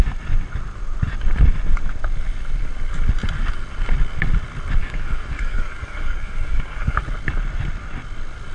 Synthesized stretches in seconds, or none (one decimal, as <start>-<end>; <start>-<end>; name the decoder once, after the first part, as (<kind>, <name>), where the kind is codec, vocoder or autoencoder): 4.8-7.0 (codec, DAC)

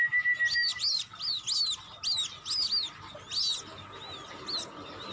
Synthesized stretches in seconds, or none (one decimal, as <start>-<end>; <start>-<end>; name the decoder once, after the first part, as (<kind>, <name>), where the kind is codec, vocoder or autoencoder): 0.7-1.3 (vocoder, BigVGAN v2)

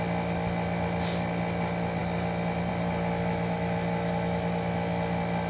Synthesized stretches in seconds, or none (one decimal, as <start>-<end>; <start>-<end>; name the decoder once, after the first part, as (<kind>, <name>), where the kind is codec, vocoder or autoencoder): none